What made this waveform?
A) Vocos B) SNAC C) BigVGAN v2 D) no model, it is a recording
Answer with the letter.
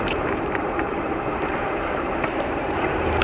C